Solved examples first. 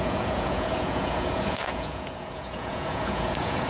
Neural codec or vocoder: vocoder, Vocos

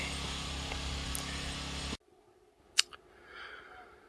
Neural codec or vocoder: none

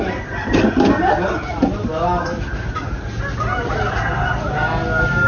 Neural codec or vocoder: none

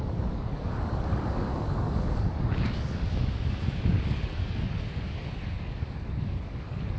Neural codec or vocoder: codec, DAC